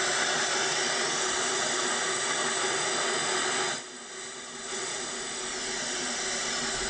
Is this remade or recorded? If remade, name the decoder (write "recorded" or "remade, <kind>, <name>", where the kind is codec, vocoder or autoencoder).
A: recorded